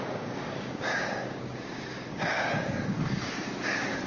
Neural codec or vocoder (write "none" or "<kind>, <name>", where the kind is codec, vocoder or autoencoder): codec, DAC